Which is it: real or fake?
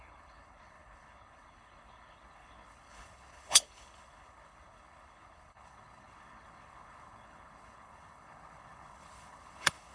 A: fake